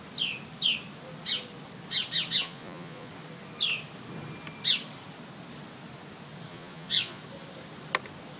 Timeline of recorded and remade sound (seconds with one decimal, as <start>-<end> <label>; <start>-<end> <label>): 0.0-2.4 recorded; 2.4-3.1 remade; 3.1-6.5 recorded; 6.5-7.2 remade; 7.2-8.4 recorded